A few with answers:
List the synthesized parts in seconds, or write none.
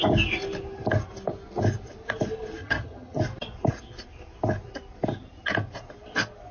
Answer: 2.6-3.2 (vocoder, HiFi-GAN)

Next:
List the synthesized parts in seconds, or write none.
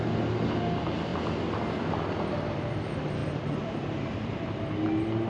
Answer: 1.1-1.6 (vocoder, BigVGAN v2); 3.2-4.7